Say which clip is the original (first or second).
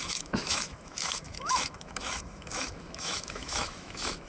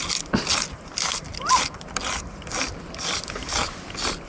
second